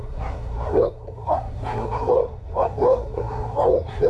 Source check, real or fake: fake